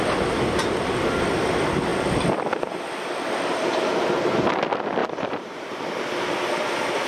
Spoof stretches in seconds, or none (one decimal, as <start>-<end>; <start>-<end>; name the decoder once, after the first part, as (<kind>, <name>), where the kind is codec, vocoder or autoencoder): 5.0-5.7 (vocoder, BigVGAN v2)